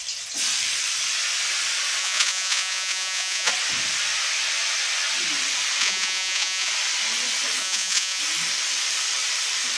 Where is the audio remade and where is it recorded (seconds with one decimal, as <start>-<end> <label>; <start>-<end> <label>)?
0.0-2.0 recorded; 2.0-3.5 remade; 3.5-5.8 recorded; 5.8-6.7 remade; 6.7-7.6 recorded; 7.6-8.2 remade; 8.2-9.8 recorded